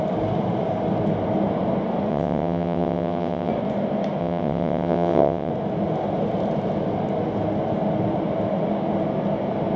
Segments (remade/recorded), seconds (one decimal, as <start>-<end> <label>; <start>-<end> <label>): 0.0-2.1 recorded; 2.1-3.5 remade; 3.5-4.2 recorded; 4.2-5.5 remade; 5.5-9.8 recorded